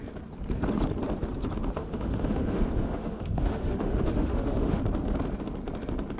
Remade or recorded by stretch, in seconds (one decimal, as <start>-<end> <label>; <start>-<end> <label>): 0.0-1.8 recorded; 1.8-4.8 remade; 4.8-6.2 recorded